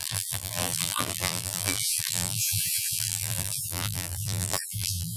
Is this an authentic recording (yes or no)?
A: no